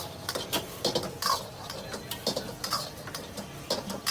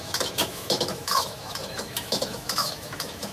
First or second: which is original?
first